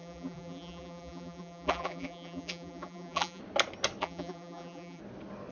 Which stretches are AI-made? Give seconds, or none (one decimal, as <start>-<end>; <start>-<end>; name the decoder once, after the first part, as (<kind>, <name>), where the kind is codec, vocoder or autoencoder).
0.0-3.4 (vocoder, BigVGAN v2); 4.0-5.0